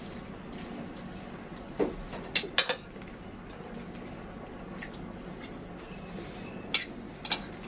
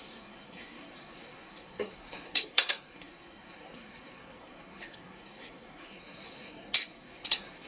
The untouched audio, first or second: first